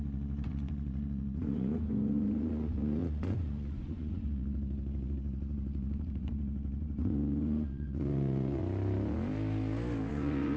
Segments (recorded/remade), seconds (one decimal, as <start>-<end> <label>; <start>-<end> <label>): 0.0-8.6 remade; 8.6-10.1 recorded; 10.1-10.6 remade